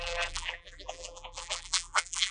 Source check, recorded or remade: remade